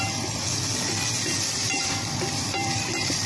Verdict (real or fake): fake